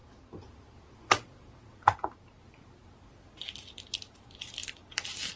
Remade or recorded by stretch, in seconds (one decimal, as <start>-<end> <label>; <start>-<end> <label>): 0.0-4.6 recorded; 4.6-5.4 remade